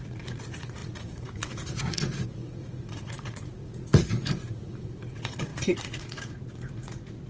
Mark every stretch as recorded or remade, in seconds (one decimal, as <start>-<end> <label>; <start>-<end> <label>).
0.0-7.3 remade